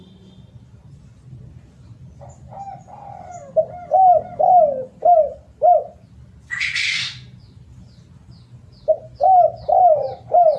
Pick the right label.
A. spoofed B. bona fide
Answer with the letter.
B